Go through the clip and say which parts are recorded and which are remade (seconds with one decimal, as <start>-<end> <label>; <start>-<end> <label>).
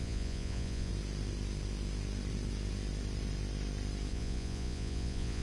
0.0-0.9 remade; 0.9-4.1 recorded; 4.1-5.4 remade